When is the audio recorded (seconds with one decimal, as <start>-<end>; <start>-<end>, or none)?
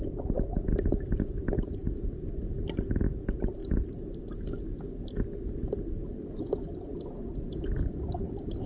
0.0-8.7